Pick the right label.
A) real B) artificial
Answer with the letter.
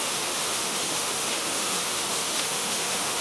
B